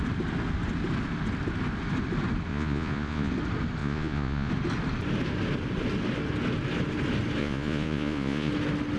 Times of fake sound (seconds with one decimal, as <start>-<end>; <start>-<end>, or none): 2.5-3.3; 3.8-4.5; 7.4-8.5